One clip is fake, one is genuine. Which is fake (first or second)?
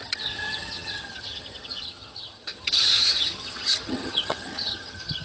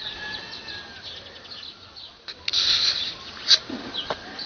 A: first